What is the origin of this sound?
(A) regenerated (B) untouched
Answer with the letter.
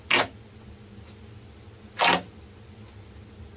B